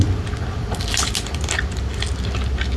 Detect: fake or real real